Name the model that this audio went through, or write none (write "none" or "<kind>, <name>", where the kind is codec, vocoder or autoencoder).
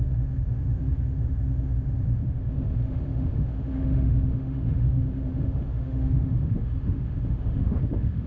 autoencoder, DAC-VAE